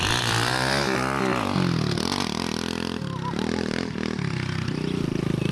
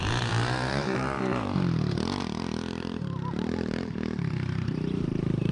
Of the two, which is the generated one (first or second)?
second